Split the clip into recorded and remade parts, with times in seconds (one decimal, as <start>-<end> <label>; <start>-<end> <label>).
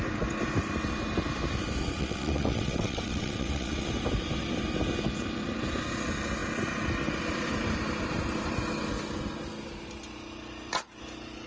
0.0-1.9 recorded; 1.9-3.9 remade; 3.9-11.5 recorded